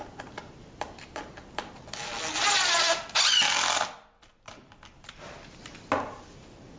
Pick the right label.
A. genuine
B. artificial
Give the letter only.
A